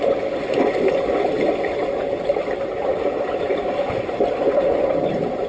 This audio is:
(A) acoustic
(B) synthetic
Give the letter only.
A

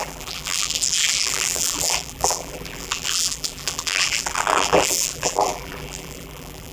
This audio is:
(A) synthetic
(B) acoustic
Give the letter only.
A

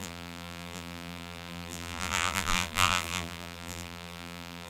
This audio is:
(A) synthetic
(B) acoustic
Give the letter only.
A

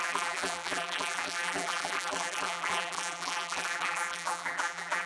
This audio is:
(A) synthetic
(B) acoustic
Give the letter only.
A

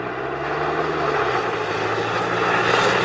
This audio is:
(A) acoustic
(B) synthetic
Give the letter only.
A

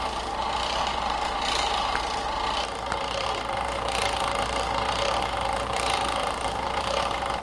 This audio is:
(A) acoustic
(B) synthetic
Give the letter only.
B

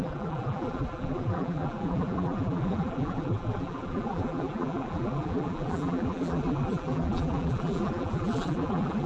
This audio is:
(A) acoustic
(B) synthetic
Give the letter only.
B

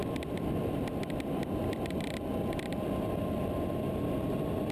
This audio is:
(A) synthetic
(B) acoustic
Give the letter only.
B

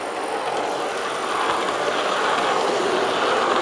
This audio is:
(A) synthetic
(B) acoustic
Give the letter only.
B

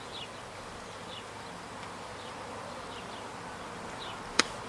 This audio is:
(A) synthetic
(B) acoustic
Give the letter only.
A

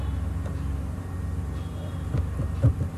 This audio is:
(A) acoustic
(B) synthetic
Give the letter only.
A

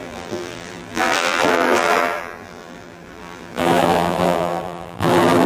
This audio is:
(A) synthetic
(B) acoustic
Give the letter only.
A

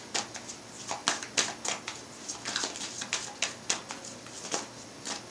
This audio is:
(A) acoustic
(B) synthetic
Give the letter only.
A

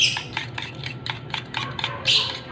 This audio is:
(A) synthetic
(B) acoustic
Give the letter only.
A